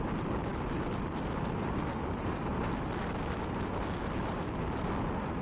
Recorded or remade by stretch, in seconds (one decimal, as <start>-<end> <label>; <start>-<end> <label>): 0.0-5.4 recorded